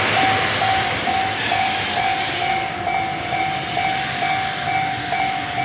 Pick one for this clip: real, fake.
real